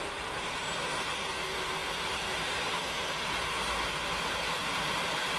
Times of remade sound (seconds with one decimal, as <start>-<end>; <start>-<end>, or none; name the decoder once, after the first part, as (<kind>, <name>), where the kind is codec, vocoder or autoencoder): none